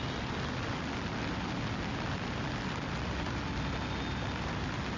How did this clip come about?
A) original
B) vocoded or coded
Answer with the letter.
A